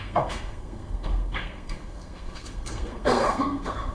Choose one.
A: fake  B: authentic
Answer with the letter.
A